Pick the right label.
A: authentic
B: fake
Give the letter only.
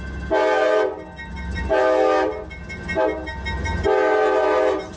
A